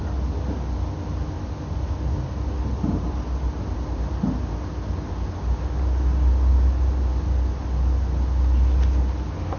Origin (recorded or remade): recorded